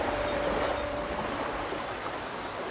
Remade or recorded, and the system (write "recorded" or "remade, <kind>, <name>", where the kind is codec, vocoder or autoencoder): recorded